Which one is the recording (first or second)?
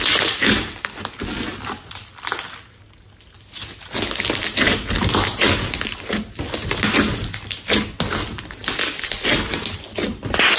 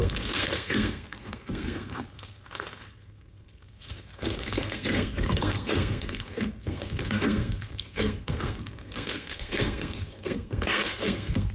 first